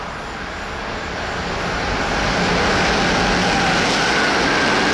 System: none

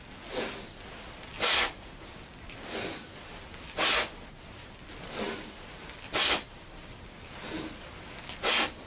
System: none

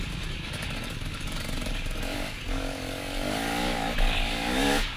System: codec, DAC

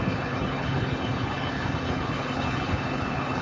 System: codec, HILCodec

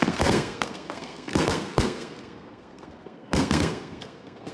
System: codec, SNAC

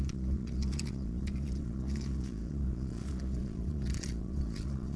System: vocoder, Vocos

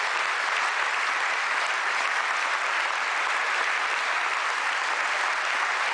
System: none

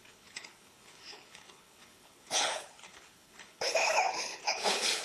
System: codec, HILCodec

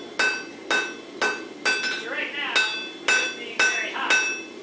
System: none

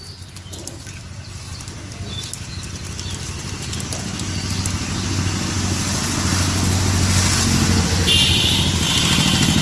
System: none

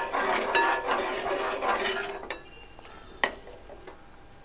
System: none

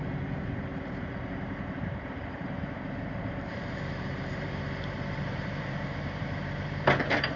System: vocoder, BigVGAN v2